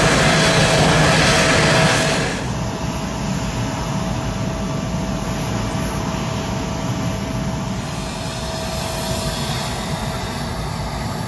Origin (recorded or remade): recorded